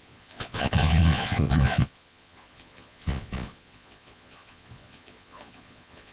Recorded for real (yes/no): no